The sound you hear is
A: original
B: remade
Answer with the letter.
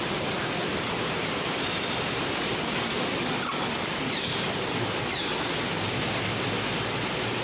A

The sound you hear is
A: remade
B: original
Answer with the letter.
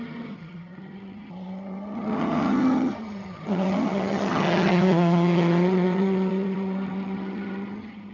A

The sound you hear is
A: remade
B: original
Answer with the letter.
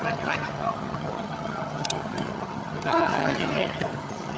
A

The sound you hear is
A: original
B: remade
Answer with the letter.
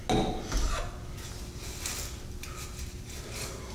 A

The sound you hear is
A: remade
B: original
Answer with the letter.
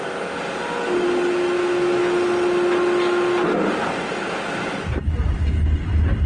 B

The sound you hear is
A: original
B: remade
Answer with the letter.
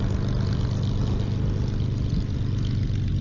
A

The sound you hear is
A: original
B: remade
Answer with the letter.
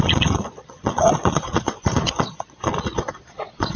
B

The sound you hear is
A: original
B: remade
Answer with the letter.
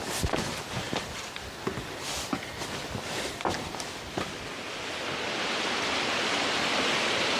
A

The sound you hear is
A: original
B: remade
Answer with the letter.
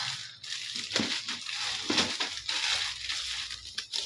A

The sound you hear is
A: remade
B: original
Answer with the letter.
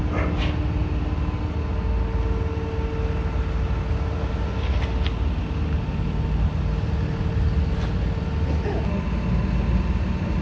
B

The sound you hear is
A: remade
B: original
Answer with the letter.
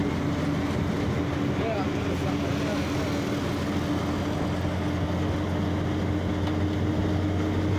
B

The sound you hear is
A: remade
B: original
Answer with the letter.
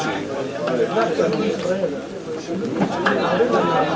B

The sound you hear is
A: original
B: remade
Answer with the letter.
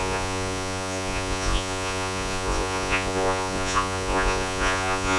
B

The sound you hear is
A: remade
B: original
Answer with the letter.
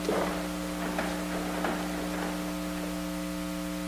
B